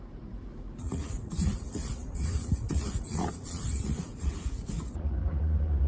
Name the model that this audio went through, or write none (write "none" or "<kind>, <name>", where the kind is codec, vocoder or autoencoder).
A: vocoder, Vocos